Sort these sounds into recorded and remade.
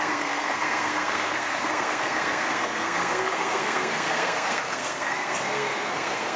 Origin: remade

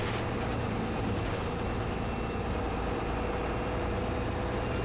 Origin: recorded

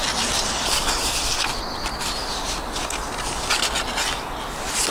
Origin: recorded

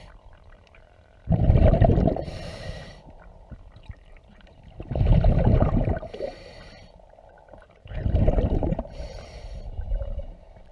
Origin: remade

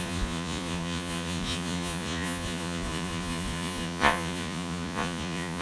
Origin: remade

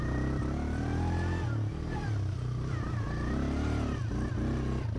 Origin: recorded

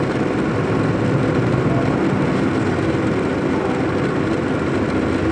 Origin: recorded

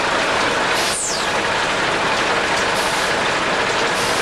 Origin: recorded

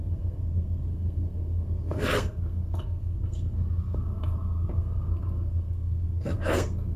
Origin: remade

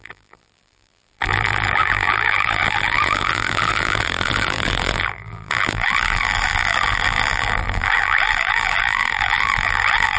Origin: remade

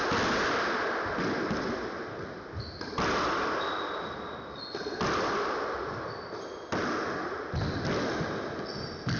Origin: recorded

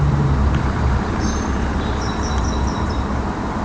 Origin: remade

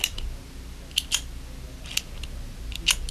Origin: recorded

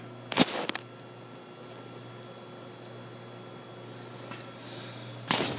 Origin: recorded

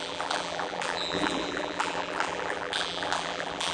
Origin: remade